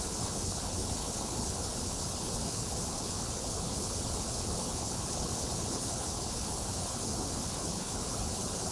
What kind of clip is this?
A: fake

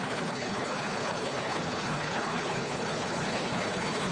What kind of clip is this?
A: fake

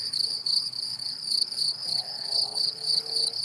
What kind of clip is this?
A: fake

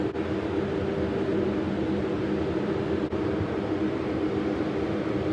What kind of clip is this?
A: real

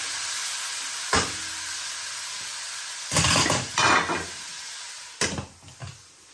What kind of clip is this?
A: real